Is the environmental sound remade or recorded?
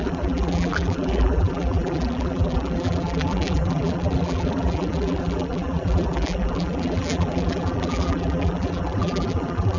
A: remade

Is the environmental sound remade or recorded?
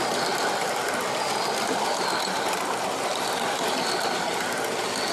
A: recorded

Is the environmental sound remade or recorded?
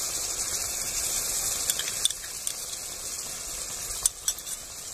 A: recorded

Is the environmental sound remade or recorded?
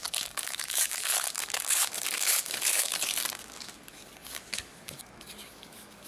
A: remade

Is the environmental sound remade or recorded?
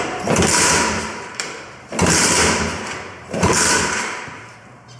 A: remade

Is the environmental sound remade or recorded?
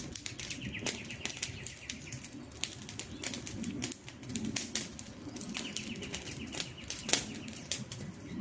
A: recorded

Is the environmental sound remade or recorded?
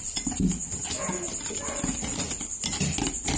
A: recorded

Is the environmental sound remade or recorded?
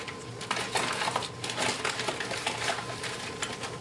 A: recorded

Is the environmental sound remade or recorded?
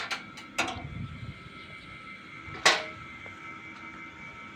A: recorded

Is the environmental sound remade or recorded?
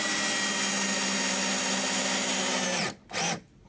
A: recorded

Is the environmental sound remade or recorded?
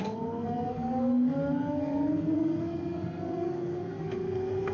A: remade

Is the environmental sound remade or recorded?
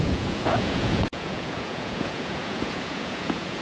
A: remade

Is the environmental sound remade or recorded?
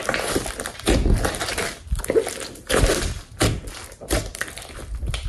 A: recorded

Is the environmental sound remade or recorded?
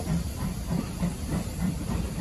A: remade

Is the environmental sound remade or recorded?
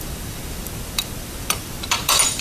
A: remade